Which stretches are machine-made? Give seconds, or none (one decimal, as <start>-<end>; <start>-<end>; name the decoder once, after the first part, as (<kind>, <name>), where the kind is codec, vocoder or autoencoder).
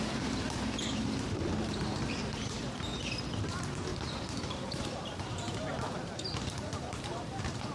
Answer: 0.0-2.6 (vocoder, BigVGAN v2); 3.4-7.7